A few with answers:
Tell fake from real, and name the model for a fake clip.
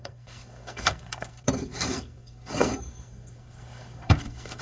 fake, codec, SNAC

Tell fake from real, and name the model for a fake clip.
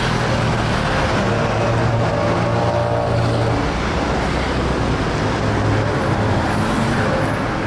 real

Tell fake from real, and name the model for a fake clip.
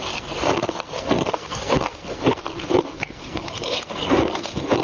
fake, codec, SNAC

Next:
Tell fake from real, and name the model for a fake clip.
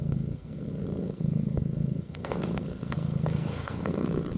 fake, codec, SNAC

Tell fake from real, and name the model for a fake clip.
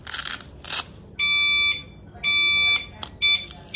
real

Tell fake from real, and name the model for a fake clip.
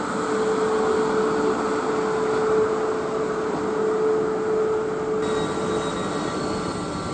real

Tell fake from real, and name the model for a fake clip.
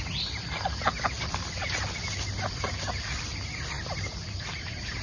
real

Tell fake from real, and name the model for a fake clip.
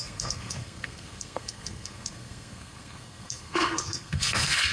fake, codec, SNAC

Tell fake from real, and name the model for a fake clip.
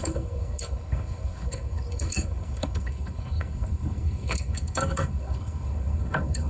fake, codec, SNAC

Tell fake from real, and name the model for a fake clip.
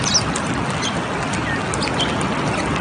real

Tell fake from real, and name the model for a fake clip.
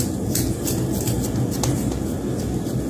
real